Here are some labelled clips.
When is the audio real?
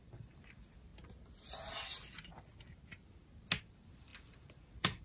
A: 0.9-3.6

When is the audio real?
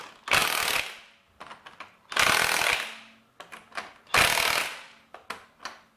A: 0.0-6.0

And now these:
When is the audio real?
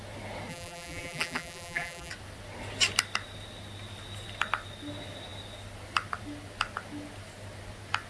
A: 0.0-0.5; 2.1-8.1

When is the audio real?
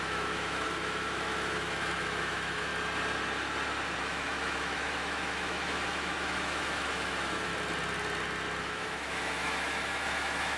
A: 2.7-4.0; 7.5-8.6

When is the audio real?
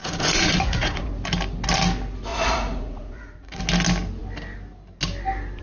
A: 1.1-2.3; 3.6-5.6